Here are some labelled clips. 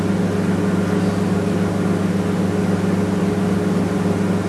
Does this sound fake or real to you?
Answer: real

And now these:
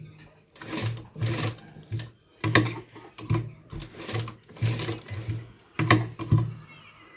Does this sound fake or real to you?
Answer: real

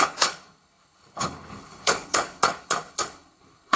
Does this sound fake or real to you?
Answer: fake